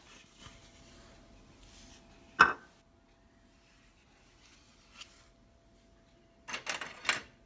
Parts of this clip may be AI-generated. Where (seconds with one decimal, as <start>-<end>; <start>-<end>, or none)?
none

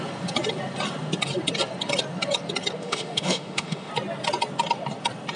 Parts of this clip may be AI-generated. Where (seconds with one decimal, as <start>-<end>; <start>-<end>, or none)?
2.8-3.9

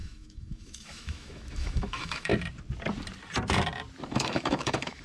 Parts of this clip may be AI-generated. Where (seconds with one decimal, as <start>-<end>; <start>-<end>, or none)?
0.0-2.3; 4.1-5.0